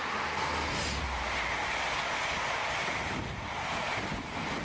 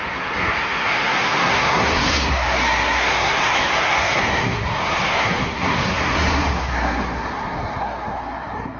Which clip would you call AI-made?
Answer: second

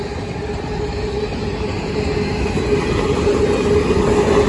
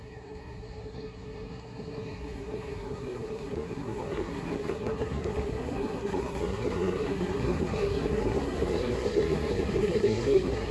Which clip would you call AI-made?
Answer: second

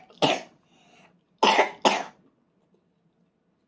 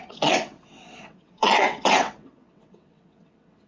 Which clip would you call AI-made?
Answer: second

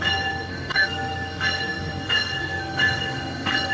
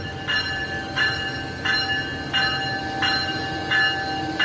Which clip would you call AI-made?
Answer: first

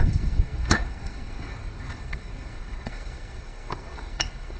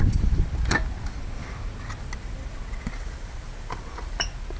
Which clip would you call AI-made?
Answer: first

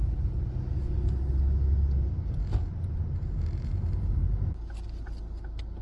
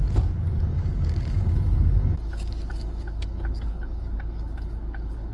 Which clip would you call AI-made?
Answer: second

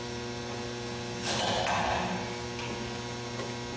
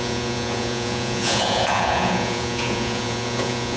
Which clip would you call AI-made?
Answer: second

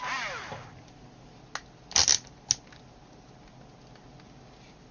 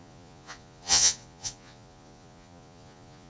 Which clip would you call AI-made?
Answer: second